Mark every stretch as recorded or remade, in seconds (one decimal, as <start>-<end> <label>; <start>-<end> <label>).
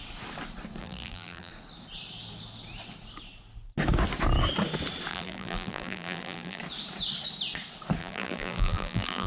0.0-0.8 recorded; 0.8-1.5 remade; 1.5-5.1 recorded; 5.1-6.6 remade; 6.6-8.0 recorded; 8.0-9.3 remade